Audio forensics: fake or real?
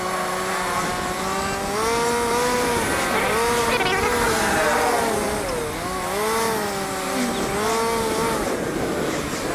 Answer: real